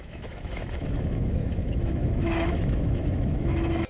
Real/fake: fake